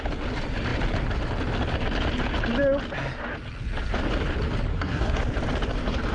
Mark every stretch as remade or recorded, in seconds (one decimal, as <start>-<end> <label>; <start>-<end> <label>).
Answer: 0.0-4.7 recorded; 4.7-5.2 remade; 5.2-6.1 recorded